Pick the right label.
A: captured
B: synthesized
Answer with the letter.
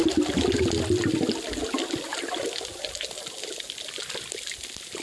A